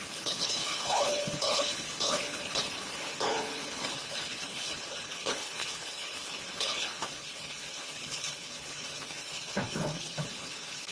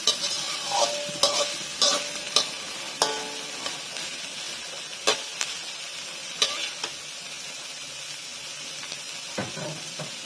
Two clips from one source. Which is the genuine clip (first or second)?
second